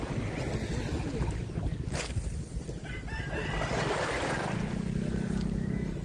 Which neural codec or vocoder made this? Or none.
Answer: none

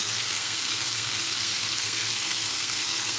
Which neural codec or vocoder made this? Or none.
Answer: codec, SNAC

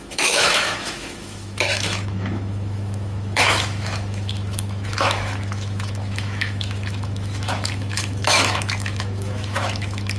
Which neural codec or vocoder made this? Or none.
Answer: autoencoder, DAC-VAE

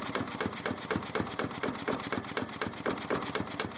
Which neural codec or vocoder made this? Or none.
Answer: none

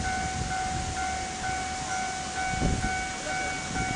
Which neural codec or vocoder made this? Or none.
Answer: none